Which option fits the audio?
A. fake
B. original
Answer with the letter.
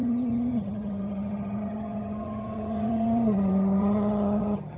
A